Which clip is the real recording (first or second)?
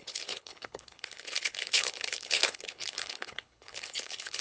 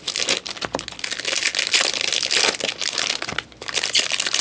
second